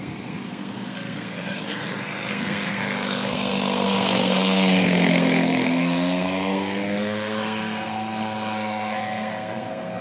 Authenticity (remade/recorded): remade